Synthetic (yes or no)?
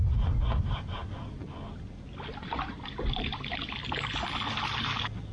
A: no